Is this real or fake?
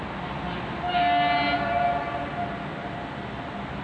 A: real